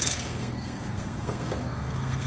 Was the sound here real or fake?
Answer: fake